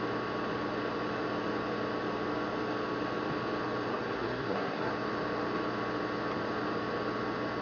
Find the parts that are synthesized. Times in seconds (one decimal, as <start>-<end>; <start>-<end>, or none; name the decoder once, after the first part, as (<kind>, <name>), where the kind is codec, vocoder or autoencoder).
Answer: 3.9-4.9 (codec, SNAC)